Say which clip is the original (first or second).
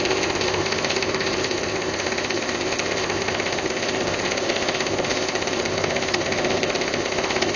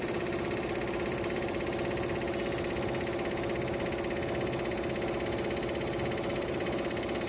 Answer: second